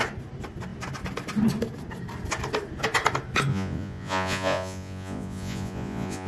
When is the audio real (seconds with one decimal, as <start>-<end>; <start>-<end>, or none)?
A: 0.0-3.5